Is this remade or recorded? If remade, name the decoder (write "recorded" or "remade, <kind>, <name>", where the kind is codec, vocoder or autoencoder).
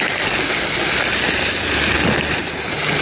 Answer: recorded